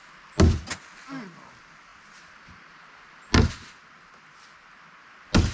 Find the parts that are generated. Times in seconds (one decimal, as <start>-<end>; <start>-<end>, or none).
none